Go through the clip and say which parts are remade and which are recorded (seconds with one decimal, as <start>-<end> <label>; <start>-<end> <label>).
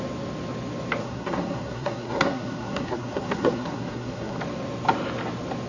0.0-1.0 recorded; 1.0-4.4 remade; 4.4-5.7 recorded